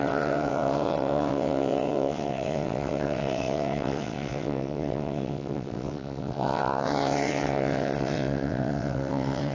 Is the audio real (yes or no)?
no